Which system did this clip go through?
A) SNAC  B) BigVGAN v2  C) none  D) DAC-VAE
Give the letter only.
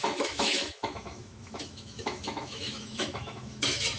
D